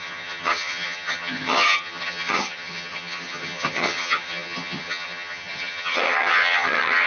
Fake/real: fake